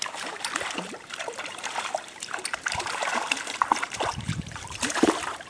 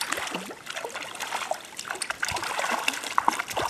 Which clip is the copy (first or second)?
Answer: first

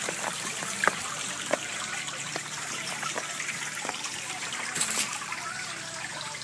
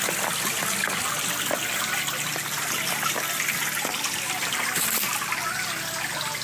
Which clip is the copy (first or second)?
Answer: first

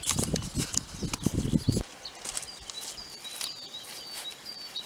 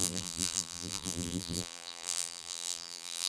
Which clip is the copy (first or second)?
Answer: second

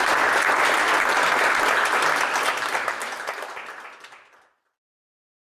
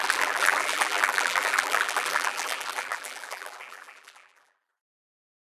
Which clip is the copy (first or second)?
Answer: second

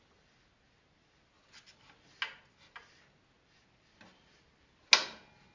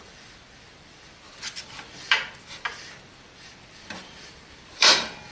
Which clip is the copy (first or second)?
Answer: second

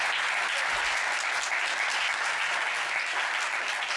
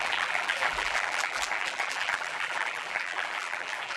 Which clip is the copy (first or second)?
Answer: second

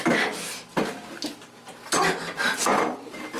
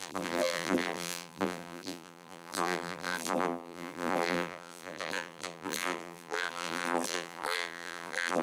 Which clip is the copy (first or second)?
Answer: second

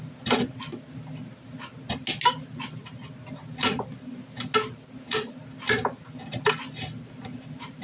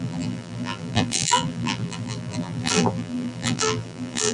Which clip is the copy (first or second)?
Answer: second